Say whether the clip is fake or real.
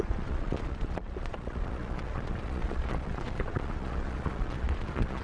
fake